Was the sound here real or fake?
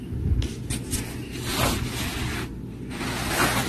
real